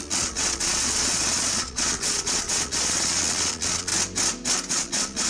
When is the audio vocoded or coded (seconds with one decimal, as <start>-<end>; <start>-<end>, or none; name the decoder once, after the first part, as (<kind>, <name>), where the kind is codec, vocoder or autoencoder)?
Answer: 0.0-3.9 (vocoder, Vocos); 4.7-5.3